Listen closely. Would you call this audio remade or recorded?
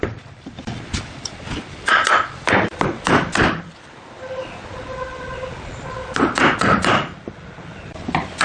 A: recorded